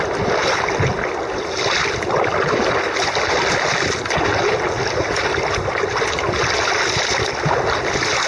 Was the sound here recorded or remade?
recorded